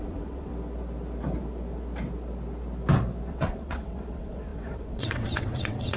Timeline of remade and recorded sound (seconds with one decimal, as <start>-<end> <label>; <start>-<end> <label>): 0.0-0.5 remade; 0.5-3.3 recorded; 3.3-6.0 remade